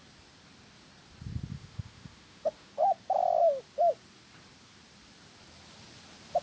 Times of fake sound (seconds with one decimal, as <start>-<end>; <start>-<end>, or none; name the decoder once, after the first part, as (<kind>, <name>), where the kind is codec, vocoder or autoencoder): 1.5-2.7 (autoencoder, DAC-VAE)

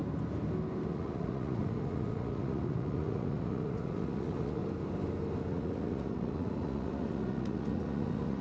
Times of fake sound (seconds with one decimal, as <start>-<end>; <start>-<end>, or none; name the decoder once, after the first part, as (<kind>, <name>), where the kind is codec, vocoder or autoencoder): 0.9-4.6 (vocoder, Vocos); 5.5-8.4

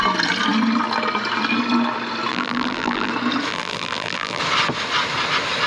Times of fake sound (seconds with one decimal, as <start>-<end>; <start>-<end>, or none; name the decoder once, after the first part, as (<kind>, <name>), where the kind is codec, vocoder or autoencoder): 2.3-3.1 (vocoder, BigVGAN v2); 3.5-4.4